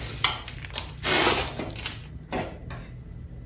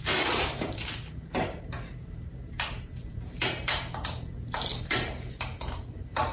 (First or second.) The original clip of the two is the first